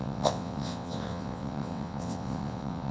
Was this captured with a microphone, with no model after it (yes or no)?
no